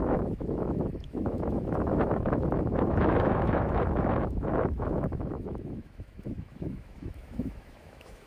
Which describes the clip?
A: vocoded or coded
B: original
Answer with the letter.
A